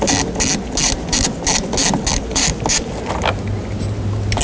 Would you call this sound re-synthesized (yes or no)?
no